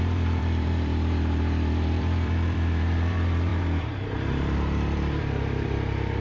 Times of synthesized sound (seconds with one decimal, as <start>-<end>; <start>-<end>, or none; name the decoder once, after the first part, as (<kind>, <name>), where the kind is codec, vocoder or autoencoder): 0.0-6.2 (vocoder, BigVGAN v2)